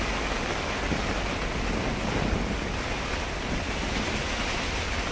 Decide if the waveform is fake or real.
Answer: real